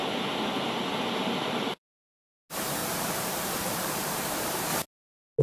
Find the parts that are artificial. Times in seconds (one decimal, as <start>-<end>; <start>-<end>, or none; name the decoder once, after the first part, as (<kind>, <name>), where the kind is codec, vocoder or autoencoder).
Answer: 0.0-2.4 (vocoder, BigVGAN v2); 2.8-4.3